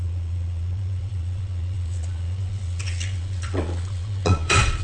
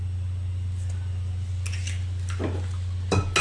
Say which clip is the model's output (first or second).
first